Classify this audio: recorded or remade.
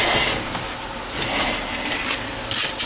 recorded